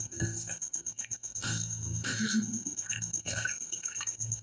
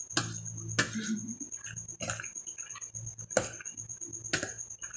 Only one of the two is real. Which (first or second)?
second